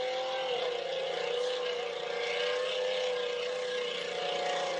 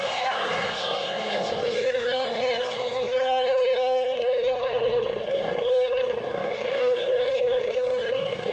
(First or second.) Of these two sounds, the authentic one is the first